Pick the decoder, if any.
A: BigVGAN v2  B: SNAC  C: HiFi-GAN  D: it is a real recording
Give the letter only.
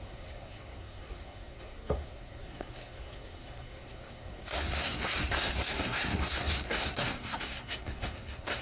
B